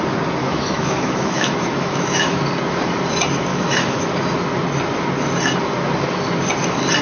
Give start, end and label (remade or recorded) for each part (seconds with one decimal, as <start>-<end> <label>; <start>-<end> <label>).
0.0-0.4 recorded; 0.4-2.4 remade; 2.4-3.5 recorded; 3.5-4.1 remade; 4.1-7.0 recorded